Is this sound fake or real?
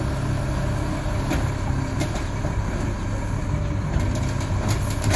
real